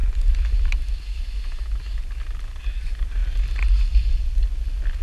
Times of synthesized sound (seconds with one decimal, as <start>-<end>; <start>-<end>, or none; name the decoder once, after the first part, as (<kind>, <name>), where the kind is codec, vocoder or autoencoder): none